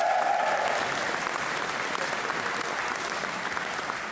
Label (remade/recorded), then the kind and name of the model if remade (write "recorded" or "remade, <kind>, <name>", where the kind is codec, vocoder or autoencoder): recorded